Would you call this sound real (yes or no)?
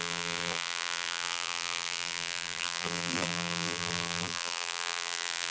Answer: no